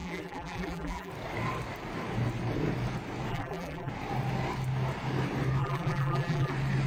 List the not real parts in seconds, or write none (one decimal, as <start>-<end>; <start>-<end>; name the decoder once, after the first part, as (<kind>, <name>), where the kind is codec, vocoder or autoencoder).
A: 0.0-1.1 (vocoder, BigVGAN v2); 3.3-3.9; 5.6-6.5